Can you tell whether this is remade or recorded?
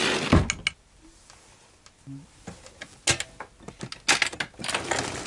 recorded